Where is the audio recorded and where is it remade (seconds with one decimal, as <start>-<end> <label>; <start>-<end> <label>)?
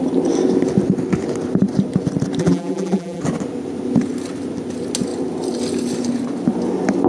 0.0-2.4 recorded; 2.4-3.2 remade; 3.2-7.1 recorded